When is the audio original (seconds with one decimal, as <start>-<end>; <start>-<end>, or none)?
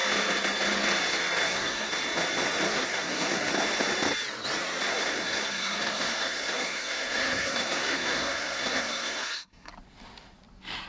0.0-1.4; 1.9-2.7; 3.5-4.9; 9.7-10.9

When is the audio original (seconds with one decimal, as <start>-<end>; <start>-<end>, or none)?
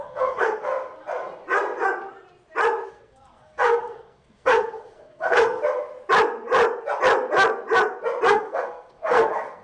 0.7-2.9; 5.6-8.3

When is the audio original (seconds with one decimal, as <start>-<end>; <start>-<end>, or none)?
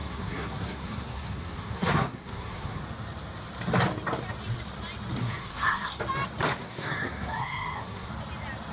2.8-5.2; 6.0-6.6; 8.1-8.7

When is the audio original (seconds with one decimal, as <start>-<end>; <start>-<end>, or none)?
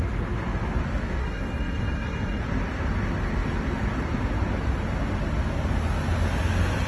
0.0-1.2; 2.4-6.9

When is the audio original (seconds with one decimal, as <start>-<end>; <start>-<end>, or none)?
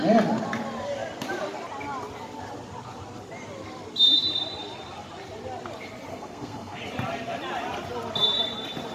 0.0-6.1; 6.8-8.9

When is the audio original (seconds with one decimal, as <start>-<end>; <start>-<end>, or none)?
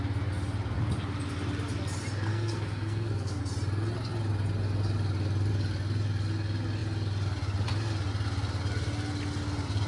0.0-2.3; 3.4-9.9